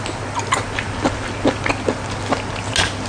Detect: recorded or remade recorded